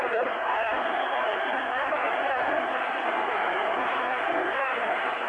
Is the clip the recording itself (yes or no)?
no